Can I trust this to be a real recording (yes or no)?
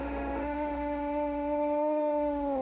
no